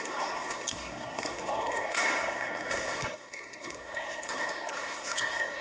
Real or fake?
fake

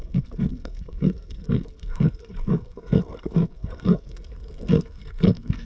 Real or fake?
fake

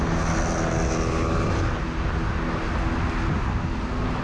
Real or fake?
real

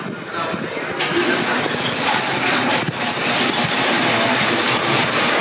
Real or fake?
real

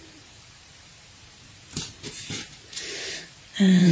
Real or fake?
fake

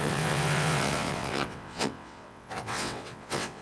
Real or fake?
fake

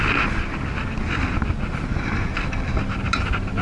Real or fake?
real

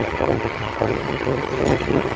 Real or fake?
fake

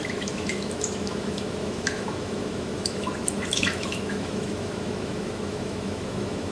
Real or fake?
fake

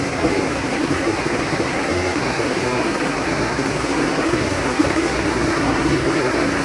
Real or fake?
fake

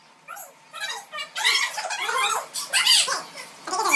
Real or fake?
real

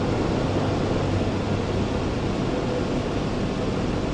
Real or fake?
real